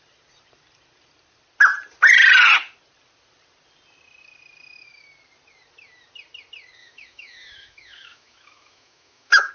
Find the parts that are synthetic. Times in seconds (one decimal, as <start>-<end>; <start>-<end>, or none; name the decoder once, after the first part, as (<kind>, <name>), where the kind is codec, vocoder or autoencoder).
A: 6.8-9.5 (autoencoder, DAC-VAE)